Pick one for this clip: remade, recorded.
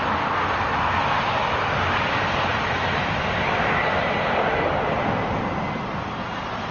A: recorded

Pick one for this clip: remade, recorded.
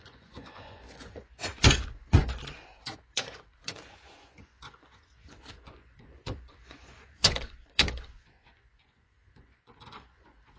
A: remade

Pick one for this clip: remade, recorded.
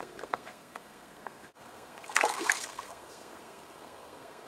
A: remade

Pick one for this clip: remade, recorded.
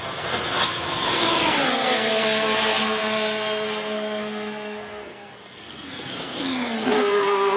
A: remade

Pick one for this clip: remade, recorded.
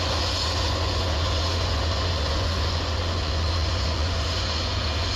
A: remade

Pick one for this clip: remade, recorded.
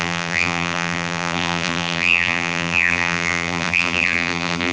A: remade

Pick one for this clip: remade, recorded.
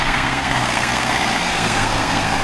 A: remade